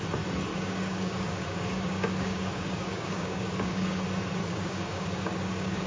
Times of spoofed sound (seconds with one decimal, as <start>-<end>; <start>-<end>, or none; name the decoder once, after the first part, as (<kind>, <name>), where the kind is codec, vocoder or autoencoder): 0.5-4.0 (codec, DAC); 4.4-5.9